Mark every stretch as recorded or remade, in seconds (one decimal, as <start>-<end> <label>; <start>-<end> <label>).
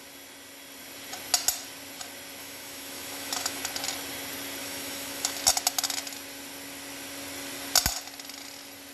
0.0-2.4 recorded; 2.4-3.6 remade; 3.6-4.6 recorded; 4.6-5.4 remade; 5.4-8.9 recorded